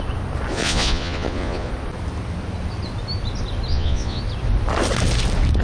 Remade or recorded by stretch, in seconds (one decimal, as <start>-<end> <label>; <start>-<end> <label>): 0.0-0.5 recorded; 0.5-1.7 remade; 1.7-3.7 recorded; 3.7-4.2 remade; 4.2-5.6 recorded